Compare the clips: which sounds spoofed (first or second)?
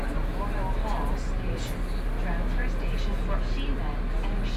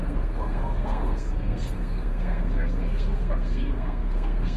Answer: second